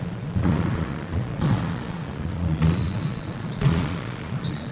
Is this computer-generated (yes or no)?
yes